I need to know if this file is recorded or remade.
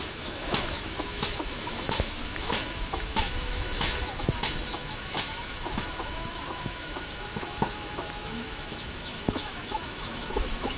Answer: remade